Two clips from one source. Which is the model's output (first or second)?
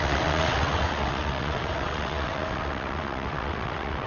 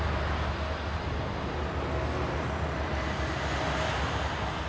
first